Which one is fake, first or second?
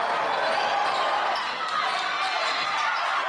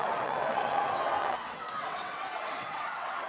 second